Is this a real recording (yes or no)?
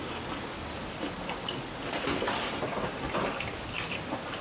yes